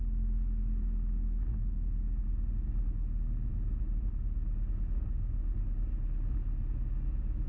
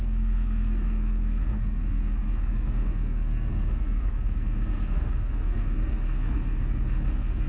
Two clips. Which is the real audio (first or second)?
first